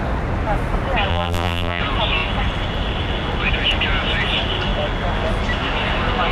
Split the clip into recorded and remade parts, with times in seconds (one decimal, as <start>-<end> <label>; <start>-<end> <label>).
0.0-1.1 recorded; 1.1-1.8 remade; 1.8-6.3 recorded